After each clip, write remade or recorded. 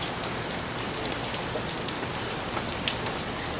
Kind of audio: recorded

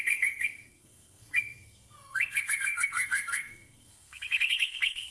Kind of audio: remade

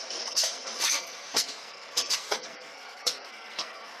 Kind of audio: remade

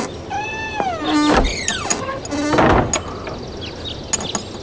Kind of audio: recorded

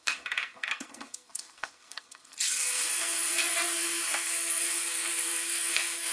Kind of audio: remade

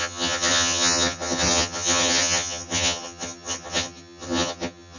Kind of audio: remade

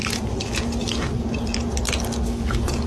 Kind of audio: recorded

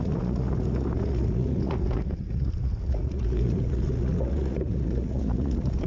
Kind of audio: remade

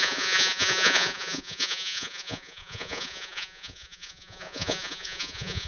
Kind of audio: remade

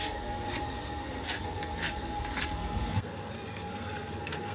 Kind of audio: remade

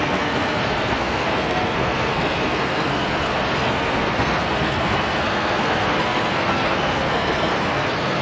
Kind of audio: remade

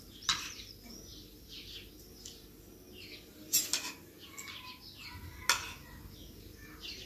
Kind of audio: recorded